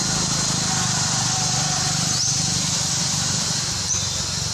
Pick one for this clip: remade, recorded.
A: recorded